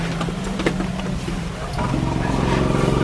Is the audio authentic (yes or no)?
yes